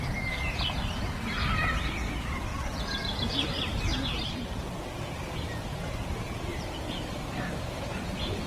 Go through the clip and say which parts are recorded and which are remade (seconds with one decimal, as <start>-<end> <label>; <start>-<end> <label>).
0.0-2.5 recorded; 2.5-4.6 remade; 4.6-6.5 recorded; 6.5-8.5 remade

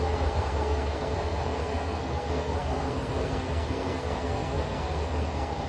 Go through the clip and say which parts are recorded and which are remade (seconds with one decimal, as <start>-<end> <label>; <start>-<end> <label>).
0.0-5.7 remade

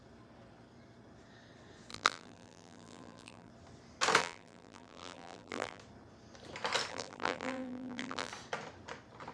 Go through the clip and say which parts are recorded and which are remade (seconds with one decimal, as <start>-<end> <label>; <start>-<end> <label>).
0.0-1.9 recorded; 1.9-3.5 remade; 3.5-4.2 recorded; 4.2-5.8 remade; 5.8-6.9 recorded; 6.9-8.3 remade; 8.3-9.3 recorded

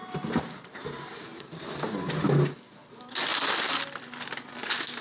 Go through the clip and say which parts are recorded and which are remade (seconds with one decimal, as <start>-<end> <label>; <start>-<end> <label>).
0.0-1.5 remade; 1.5-5.0 recorded

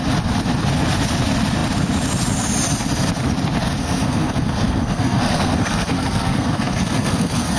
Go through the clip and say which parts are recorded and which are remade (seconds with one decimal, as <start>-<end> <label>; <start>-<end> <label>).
0.0-3.8 recorded; 3.8-7.6 remade

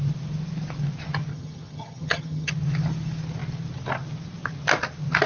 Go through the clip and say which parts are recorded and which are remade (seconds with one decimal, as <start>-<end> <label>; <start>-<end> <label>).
0.0-1.3 recorded; 1.3-2.5 remade; 2.5-5.3 recorded

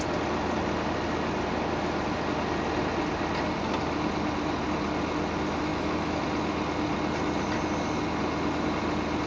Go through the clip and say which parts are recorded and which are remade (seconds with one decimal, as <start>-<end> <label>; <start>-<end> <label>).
0.0-5.7 recorded; 5.7-6.2 remade; 6.2-9.3 recorded